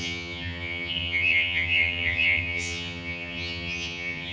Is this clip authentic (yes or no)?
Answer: no